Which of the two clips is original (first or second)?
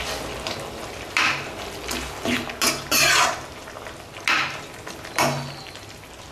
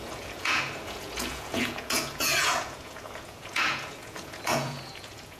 first